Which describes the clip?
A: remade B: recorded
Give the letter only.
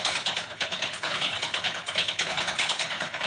A